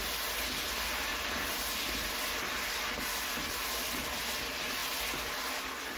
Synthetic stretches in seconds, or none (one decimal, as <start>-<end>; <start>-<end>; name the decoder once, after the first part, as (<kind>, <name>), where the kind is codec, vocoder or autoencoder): 1.1-2.4 (vocoder, BigVGAN v2)